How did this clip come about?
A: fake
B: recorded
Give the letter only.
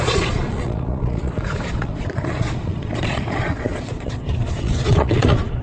A